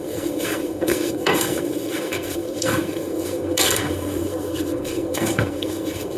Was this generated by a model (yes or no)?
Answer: yes